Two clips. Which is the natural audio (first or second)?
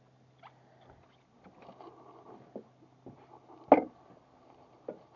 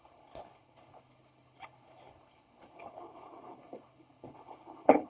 first